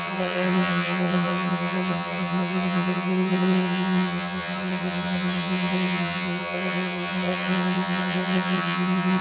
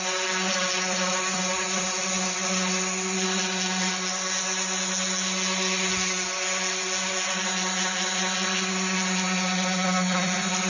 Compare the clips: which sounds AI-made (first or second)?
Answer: first